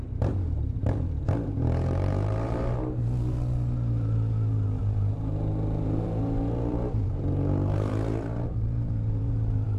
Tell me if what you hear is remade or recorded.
remade